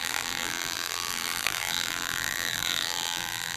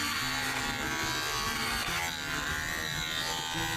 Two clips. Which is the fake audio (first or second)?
first